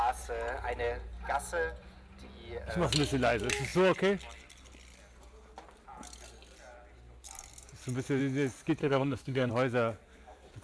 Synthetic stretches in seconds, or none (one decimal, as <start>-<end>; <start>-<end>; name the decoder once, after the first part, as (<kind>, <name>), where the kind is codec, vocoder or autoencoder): 8.8-9.5 (codec, SNAC)